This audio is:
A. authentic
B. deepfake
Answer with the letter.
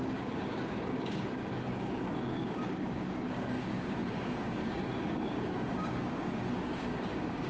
B